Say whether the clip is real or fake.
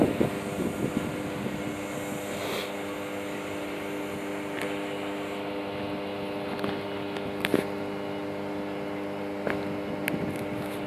real